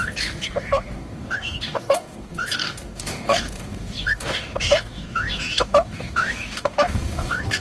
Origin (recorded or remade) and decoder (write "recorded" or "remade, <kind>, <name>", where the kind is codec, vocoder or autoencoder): remade, codec, DAC